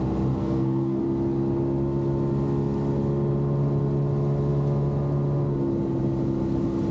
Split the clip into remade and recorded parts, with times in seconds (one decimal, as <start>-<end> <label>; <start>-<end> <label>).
0.0-0.4 recorded; 0.4-1.0 remade; 1.0-6.9 recorded